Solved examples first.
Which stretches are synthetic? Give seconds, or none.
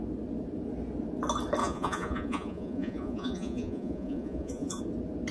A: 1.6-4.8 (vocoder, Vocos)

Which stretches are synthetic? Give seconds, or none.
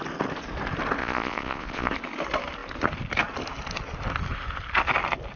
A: 1.0-1.9 (vocoder, Vocos)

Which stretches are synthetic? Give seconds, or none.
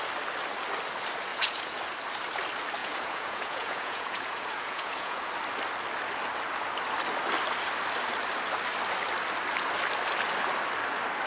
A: 1.3-1.8 (vocoder, Vocos); 2.8-5.3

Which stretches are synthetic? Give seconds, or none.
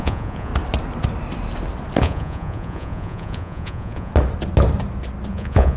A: 0.0-0.5 (vocoder, Vocos); 2.0-4.1; 5.3-5.8